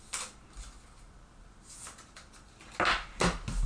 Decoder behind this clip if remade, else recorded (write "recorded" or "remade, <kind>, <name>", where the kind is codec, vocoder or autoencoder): recorded